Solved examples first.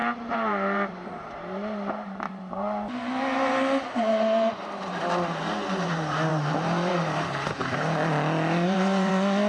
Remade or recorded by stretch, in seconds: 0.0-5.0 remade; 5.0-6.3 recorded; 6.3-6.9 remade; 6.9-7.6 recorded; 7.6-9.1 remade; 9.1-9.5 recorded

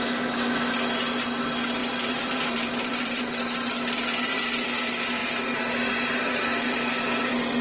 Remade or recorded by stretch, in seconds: 0.0-1.8 recorded; 1.8-3.2 remade; 3.2-7.6 recorded